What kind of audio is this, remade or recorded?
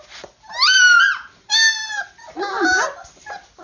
recorded